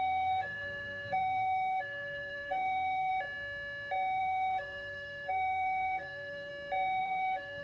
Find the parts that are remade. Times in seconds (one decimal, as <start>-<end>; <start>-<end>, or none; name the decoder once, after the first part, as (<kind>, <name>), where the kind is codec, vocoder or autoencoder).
0.0-3.1 (codec, SNAC); 4.2-6.5; 7.0-7.6